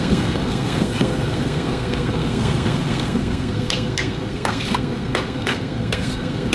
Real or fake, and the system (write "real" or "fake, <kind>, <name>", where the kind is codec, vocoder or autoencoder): fake, codec, SNAC